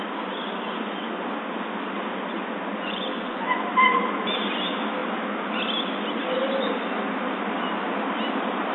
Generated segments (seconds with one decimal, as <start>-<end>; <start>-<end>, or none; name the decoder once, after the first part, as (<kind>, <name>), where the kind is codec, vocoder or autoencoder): 2.8-3.6 (vocoder, Vocos)